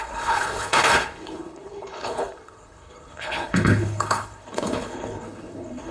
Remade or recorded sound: remade